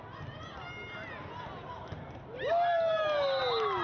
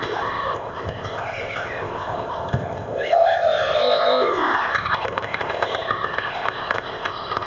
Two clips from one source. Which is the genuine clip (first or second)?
first